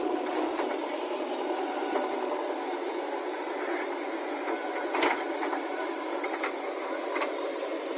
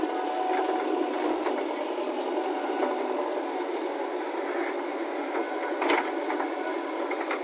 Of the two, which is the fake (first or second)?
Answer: first